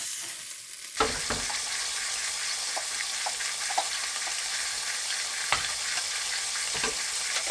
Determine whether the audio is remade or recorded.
recorded